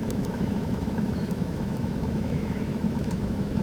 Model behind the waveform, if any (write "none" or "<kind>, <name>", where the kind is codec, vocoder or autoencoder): autoencoder, DAC-VAE